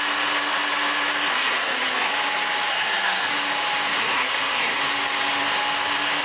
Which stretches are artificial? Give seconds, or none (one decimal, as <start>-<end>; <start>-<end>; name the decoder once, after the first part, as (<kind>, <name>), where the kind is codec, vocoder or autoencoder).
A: 1.3-2.1 (codec, SNAC); 2.7-3.3; 4.0-4.8